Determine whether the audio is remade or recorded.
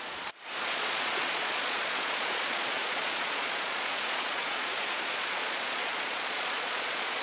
remade